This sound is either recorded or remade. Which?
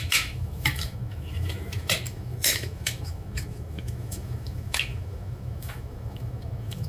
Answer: remade